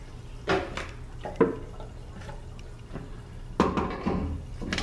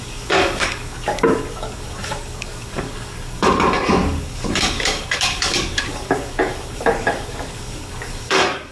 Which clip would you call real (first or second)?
first